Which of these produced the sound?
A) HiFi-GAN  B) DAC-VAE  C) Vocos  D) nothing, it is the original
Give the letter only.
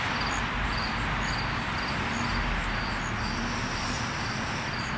D